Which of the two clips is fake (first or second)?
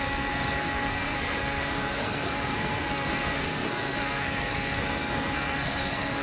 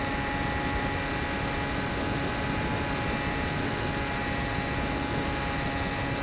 first